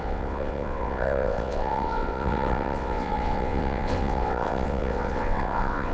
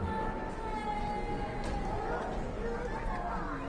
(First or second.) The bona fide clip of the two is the second